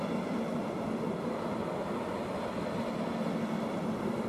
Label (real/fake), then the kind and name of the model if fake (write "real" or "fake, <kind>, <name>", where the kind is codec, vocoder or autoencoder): real